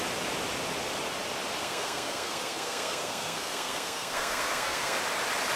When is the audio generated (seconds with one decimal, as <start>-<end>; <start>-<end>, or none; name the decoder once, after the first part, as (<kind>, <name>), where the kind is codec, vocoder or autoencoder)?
1.6-5.0 (codec, SNAC)